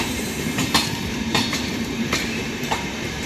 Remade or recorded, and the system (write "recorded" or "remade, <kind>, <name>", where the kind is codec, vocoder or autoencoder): remade, vocoder, BigVGAN v2